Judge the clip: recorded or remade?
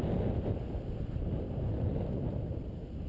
recorded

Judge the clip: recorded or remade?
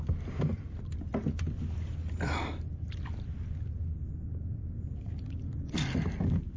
recorded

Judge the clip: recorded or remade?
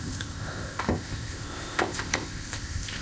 remade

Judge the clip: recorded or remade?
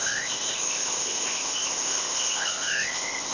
remade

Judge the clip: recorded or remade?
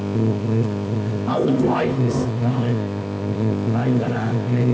remade